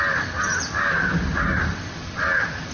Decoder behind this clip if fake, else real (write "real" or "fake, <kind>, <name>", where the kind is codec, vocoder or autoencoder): real